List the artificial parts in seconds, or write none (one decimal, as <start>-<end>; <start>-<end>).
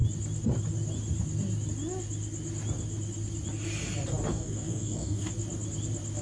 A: 4.3-5.3